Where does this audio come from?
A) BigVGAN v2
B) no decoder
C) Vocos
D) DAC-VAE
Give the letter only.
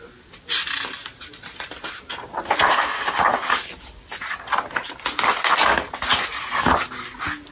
B